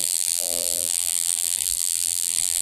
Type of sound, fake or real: fake